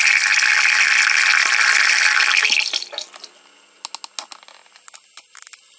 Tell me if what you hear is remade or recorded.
recorded